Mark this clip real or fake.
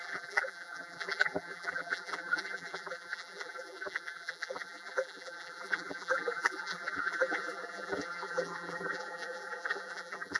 fake